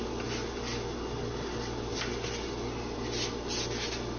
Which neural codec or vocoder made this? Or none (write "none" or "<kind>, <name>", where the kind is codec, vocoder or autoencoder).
none